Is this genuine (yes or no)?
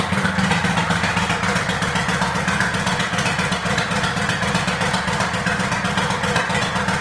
yes